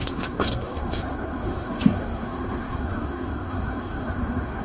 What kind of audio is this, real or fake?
fake